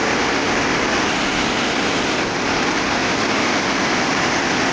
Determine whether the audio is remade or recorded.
recorded